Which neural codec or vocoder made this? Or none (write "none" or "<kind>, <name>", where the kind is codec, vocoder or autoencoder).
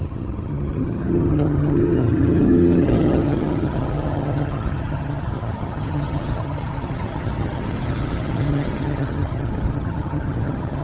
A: vocoder, HiFi-GAN